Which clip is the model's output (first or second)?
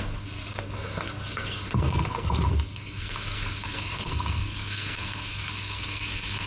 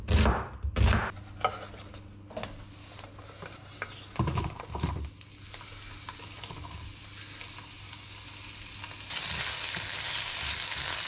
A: first